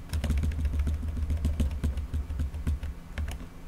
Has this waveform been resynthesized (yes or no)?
no